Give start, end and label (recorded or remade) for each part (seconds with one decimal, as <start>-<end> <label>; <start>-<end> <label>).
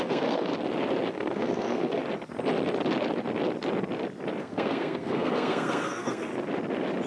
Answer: 0.0-0.5 remade; 0.5-1.1 recorded; 1.1-2.0 remade; 2.0-4.4 recorded; 4.4-6.3 remade; 6.3-7.1 recorded